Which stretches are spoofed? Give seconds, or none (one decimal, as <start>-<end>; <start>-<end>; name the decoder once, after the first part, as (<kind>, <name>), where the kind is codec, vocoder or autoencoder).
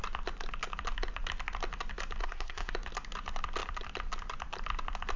2.2-2.7 (codec, SNAC)